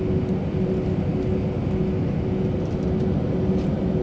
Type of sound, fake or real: real